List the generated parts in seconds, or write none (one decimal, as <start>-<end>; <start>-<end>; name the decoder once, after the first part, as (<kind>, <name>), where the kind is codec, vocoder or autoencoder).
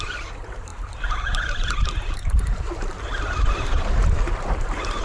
0.0-5.0 (vocoder, BigVGAN v2)